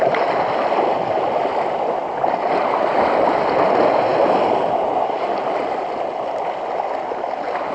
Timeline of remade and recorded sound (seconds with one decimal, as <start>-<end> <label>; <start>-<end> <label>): 0.0-4.1 recorded; 4.1-5.2 remade; 5.2-7.7 recorded